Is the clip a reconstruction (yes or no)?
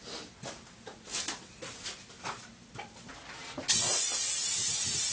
no